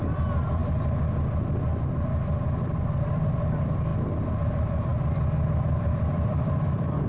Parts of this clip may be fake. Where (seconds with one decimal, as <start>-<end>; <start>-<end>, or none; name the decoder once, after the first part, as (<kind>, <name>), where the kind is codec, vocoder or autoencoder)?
0.0-0.6 (vocoder, BigVGAN v2); 1.9-3.9; 4.4-7.1